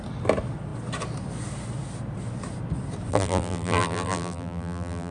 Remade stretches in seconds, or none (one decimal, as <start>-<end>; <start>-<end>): 3.1-5.1